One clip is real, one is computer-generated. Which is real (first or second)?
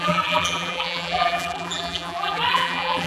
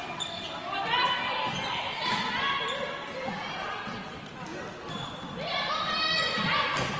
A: second